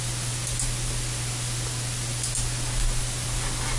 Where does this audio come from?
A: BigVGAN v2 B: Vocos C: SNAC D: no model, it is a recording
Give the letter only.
D